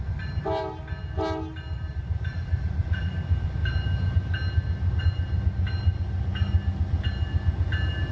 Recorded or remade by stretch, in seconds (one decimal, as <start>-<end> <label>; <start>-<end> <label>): 0.0-2.3 recorded; 2.3-3.1 remade; 3.1-8.1 recorded